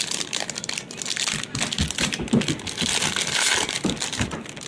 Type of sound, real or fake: real